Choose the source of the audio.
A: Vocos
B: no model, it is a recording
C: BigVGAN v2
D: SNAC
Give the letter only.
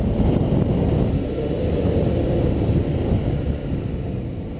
B